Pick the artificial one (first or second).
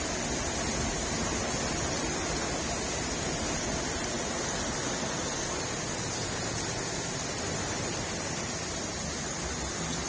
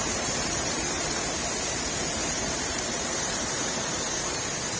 second